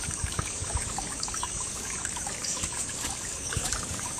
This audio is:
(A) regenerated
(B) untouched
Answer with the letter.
A